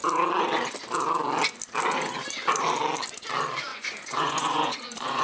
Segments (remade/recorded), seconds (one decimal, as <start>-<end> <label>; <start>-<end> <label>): 0.0-3.7 recorded; 3.7-5.2 remade